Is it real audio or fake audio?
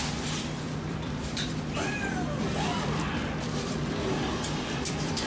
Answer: fake